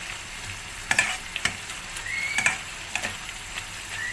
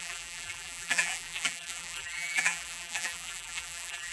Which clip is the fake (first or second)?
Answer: second